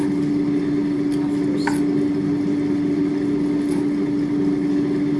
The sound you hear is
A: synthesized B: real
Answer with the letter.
B